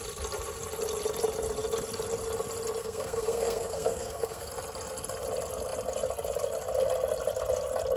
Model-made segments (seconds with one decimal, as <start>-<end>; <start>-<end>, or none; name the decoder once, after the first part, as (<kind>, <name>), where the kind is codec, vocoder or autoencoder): 2.8-4.5 (codec, SNAC)